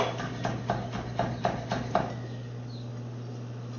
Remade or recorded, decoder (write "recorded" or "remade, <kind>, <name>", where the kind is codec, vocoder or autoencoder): recorded